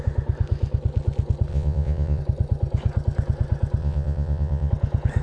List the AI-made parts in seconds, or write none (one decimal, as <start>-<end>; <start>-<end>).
1.5-2.2; 3.8-4.7